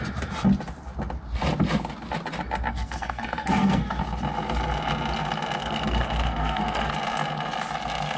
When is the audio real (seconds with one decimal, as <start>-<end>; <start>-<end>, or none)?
0.0-2.7; 4.0-5.6; 6.9-8.2